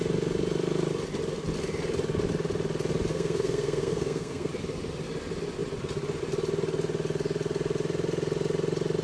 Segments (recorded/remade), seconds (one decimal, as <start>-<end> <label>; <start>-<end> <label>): 0.0-3.1 recorded; 3.1-4.5 remade; 4.5-9.0 recorded